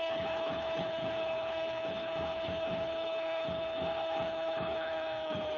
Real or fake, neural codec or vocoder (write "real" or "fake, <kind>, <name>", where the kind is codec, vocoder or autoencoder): fake, codec, HILCodec